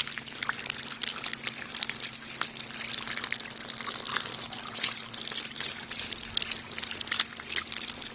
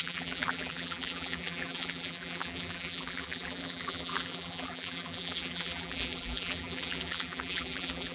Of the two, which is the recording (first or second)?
first